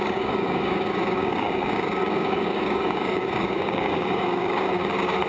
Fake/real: fake